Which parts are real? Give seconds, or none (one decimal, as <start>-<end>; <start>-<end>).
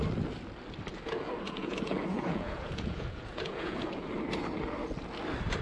0.0-0.9; 4.1-5.6